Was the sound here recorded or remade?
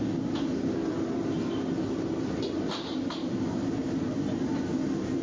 recorded